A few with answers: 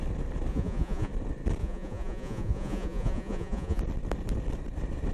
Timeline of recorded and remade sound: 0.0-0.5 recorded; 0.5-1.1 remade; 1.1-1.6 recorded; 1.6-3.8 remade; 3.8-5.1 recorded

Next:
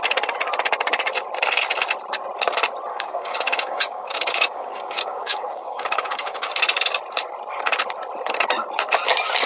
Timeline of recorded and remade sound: 0.0-2.9 recorded; 2.9-6.5 remade; 6.5-9.5 recorded

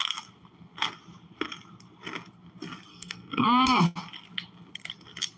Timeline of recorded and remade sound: 0.0-2.9 recorded; 2.9-3.8 remade; 3.8-5.4 recorded